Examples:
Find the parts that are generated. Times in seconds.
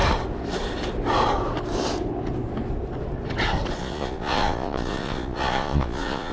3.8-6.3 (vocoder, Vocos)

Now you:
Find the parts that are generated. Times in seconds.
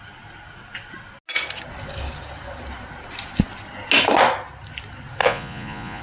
5.2-6.0 (vocoder, Vocos)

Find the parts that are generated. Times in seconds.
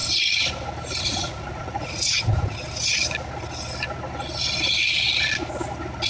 1.0-2.3 (vocoder, Vocos)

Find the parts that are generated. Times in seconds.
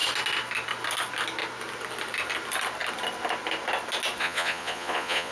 4.2-5.3 (vocoder, Vocos)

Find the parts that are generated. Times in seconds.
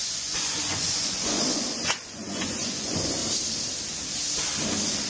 0.0-3.2 (vocoder, Vocos)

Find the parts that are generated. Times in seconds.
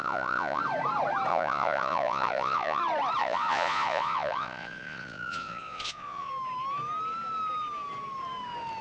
0.0-0.6 (vocoder, Vocos); 1.3-2.8; 3.2-6.3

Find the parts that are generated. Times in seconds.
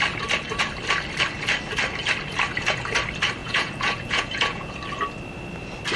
3.4-4.7 (vocoder, Vocos)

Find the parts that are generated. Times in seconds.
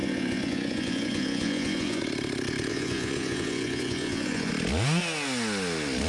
0.0-2.0 (vocoder, Vocos); 2.7-4.5